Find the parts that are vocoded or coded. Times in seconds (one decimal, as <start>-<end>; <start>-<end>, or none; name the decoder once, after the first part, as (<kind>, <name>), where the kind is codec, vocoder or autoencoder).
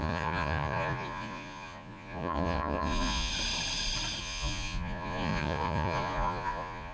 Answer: 0.0-3.3 (vocoder, Vocos); 4.2-6.9